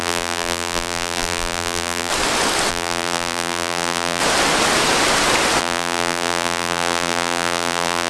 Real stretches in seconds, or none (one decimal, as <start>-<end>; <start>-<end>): 2.1-2.7; 4.2-5.6